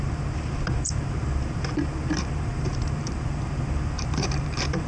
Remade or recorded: remade